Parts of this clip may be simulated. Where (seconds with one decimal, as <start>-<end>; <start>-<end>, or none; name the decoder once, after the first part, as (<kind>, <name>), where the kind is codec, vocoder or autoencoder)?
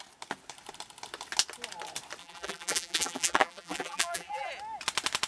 2.2-4.5 (vocoder, BigVGAN v2)